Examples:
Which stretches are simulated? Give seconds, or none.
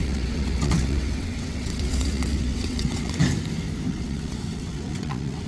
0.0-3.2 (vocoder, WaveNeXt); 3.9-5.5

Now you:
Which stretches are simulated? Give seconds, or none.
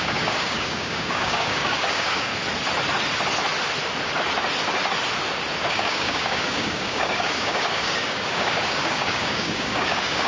0.0-2.3 (codec, DAC); 5.7-10.3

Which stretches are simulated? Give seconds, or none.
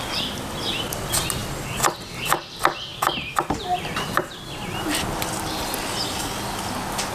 2.9-6.0 (vocoder, BigVGAN v2)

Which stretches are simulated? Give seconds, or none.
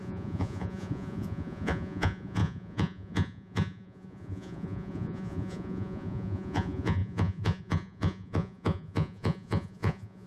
0.0-10.3 (vocoder, Vocos)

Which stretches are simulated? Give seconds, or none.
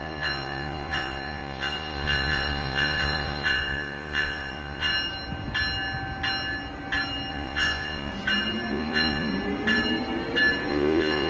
0.0-4.9 (vocoder, Vocos); 7.3-8.1; 8.7-9.3; 10.7-11.3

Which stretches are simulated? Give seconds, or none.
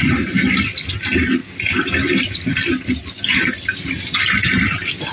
none